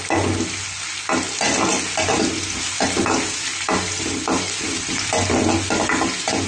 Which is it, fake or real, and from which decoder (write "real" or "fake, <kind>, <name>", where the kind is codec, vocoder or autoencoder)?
real